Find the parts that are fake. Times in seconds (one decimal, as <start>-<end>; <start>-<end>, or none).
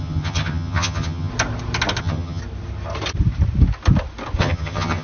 0.0-1.3; 2.0-2.4; 4.4-5.0